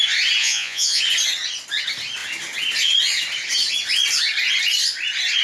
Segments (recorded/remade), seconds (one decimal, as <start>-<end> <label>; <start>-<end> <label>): 0.0-0.4 recorded; 0.4-1.0 remade; 1.0-5.4 recorded